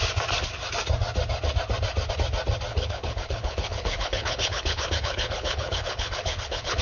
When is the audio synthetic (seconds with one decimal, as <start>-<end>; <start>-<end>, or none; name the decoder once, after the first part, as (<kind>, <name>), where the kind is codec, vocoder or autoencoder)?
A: 2.7-6.8 (codec, HILCodec)